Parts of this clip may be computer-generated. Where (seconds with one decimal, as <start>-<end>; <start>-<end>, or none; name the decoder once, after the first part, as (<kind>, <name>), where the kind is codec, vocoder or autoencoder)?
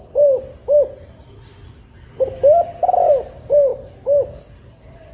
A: none